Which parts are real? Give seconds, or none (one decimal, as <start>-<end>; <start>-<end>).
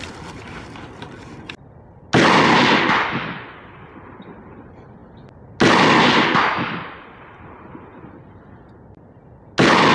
0.0-9.9